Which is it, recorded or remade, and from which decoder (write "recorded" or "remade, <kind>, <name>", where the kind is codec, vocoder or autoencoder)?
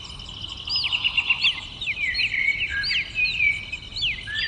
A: recorded